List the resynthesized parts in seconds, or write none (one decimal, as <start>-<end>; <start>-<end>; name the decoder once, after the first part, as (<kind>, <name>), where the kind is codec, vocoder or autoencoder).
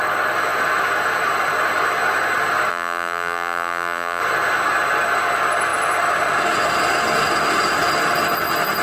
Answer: 2.7-4.2 (vocoder, BigVGAN v2)